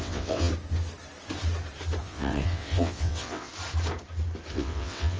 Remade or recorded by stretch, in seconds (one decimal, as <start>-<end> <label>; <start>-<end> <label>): 0.0-0.5 remade; 0.5-2.0 recorded; 2.0-3.5 remade; 3.5-4.5 recorded; 4.5-5.2 remade